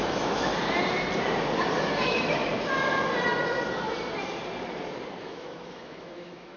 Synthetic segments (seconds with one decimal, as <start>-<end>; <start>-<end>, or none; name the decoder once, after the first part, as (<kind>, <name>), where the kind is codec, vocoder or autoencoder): 0.0-0.5 (autoencoder, DAC-VAE); 1.8-2.5; 5.2-6.6